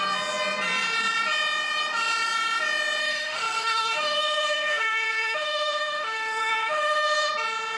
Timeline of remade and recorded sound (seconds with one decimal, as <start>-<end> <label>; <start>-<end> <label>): 0.0-3.0 recorded; 3.0-7.3 remade; 7.3-7.8 recorded